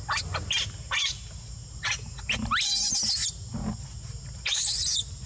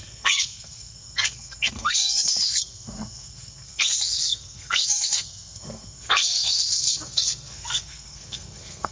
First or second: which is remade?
second